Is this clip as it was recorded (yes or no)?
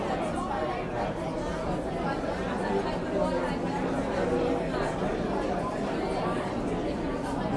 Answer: yes